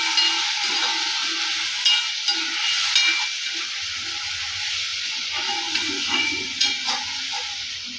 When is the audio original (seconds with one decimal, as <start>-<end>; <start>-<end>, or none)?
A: 0.0-4.9; 7.2-8.0